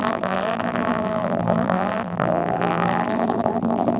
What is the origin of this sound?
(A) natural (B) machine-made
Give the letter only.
B